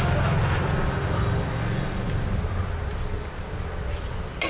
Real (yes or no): yes